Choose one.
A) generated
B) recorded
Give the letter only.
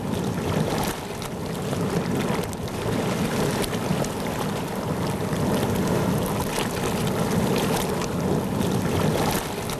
B